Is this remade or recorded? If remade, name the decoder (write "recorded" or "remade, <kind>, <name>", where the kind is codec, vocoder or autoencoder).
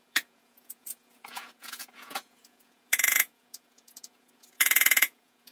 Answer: remade, vocoder, Vocos